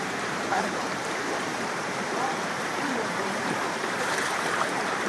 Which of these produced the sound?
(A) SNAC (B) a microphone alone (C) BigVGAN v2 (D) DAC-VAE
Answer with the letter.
C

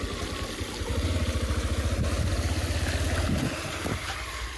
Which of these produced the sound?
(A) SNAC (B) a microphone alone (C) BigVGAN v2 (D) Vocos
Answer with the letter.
B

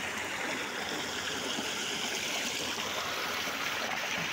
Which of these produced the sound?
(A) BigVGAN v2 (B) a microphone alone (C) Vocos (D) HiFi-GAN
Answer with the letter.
B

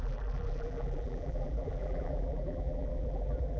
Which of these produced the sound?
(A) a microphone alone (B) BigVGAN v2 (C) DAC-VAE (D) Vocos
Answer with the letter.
B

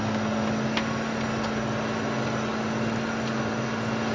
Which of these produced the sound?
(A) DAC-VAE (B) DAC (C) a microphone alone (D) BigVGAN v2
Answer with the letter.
C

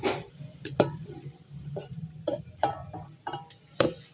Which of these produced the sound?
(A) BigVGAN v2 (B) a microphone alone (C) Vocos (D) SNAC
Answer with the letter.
A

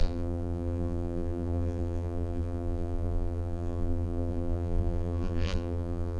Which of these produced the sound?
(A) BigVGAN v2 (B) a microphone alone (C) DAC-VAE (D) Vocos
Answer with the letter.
A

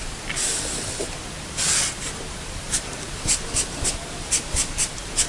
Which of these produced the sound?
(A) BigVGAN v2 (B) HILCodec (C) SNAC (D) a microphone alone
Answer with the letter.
A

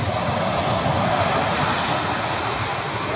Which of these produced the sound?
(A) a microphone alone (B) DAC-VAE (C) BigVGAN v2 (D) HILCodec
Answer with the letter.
A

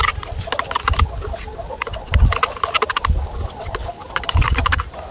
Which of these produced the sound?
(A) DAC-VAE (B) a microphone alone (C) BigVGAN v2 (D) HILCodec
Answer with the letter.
C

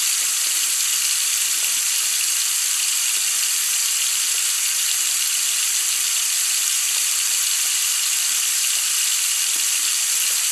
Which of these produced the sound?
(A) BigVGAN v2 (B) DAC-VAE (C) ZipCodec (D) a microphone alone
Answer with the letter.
D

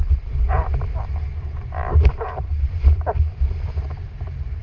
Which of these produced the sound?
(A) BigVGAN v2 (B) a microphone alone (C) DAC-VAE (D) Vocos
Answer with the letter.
A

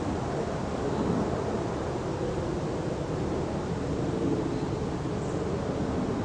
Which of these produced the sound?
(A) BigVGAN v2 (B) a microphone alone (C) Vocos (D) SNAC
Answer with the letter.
B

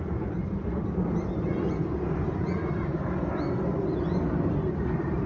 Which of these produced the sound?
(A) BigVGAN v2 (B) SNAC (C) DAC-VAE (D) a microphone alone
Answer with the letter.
A